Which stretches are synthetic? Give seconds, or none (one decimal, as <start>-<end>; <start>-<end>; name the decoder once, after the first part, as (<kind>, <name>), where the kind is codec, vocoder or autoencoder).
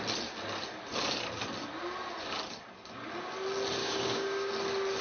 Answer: 3.8-4.5 (codec, DAC)